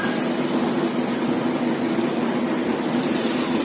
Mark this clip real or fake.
real